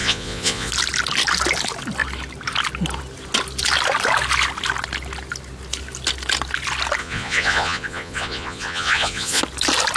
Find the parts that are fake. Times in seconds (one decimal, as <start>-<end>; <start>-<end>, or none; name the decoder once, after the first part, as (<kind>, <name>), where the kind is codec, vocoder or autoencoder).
0.0-0.7 (vocoder, Vocos); 7.0-9.4